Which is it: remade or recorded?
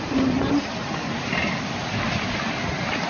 recorded